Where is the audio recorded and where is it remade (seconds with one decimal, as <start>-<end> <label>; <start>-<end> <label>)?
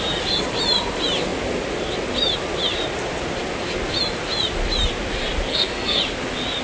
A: 0.0-5.5 recorded; 5.5-6.0 remade; 6.0-6.6 recorded